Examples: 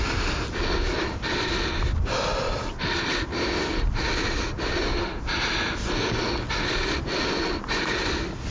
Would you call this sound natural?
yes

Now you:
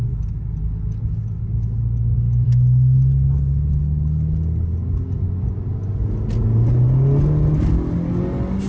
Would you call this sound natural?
yes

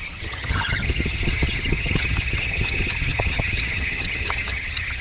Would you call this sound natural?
no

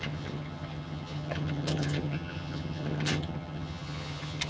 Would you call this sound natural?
no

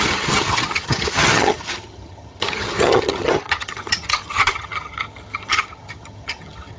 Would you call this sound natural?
no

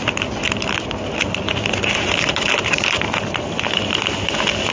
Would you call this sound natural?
yes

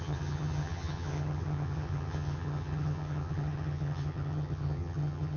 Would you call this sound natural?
no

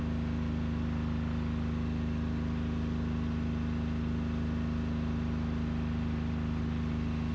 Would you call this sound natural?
yes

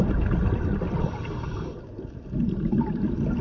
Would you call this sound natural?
yes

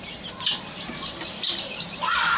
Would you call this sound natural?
yes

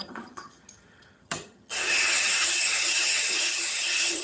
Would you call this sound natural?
no